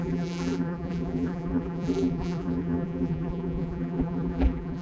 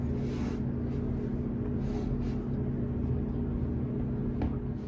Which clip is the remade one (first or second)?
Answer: first